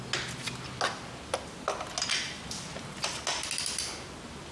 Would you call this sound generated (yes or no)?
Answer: no